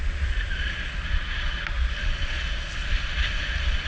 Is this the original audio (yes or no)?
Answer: yes